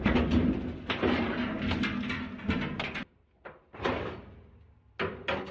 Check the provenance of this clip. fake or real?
real